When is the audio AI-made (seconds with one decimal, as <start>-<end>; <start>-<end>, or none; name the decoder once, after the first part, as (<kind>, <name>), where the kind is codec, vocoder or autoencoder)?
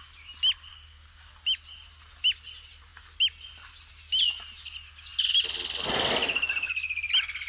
0.7-1.3 (codec, DAC)